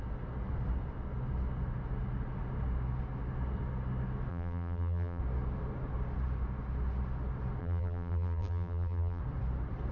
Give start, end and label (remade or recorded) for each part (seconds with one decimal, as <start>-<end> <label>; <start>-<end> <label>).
0.0-4.3 recorded; 4.3-5.2 remade; 5.2-7.6 recorded; 7.6-9.2 remade; 9.2-9.9 recorded